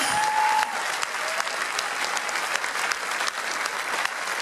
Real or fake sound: real